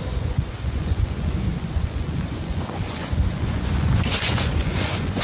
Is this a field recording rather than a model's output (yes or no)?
no